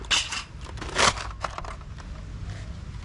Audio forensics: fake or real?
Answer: real